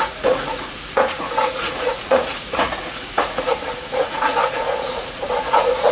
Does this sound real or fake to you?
fake